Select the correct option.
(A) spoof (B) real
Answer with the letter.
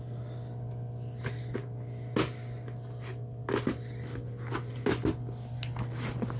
B